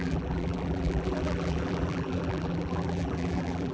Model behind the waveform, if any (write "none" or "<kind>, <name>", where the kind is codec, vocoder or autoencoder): vocoder, BigVGAN v2